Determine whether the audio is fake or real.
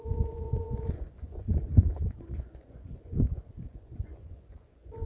fake